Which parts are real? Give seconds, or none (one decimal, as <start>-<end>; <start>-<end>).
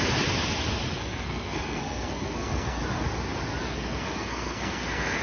0.0-0.9; 2.8-3.6